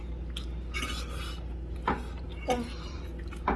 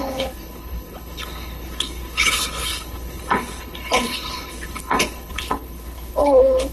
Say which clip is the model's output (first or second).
second